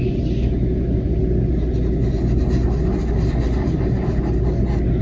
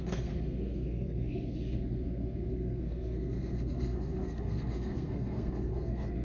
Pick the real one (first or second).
first